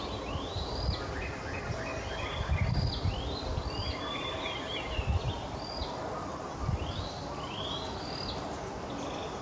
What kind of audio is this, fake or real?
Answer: real